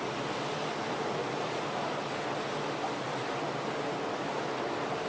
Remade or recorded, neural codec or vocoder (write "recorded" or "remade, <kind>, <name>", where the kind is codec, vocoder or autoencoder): recorded